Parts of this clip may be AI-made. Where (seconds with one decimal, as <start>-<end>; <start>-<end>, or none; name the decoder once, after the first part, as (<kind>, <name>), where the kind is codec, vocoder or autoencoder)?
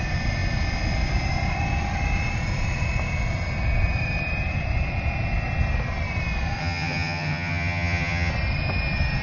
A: 6.6-8.3 (vocoder, HiFi-GAN)